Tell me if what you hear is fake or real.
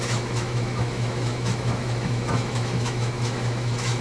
fake